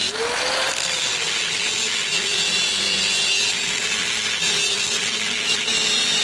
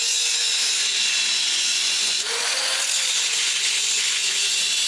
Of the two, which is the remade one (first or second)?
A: second